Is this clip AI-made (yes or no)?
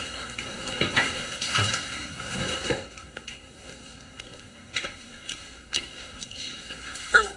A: yes